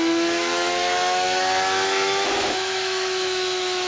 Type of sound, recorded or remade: remade